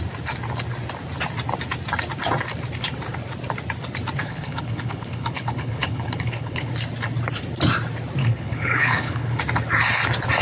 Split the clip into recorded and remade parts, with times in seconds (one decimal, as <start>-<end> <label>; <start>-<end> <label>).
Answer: 0.0-4.2 recorded; 4.2-6.7 remade; 6.7-8.2 recorded; 8.2-9.4 remade; 9.4-10.4 recorded